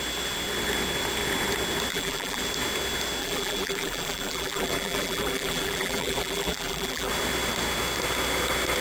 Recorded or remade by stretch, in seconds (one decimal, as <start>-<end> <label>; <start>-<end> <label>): 0.0-1.9 recorded; 1.9-2.4 remade; 2.4-3.2 recorded; 3.2-7.1 remade; 7.1-8.8 recorded